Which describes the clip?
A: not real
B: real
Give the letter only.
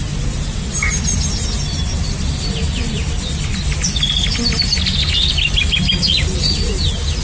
B